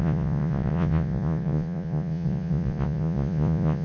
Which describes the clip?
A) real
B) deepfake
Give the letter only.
B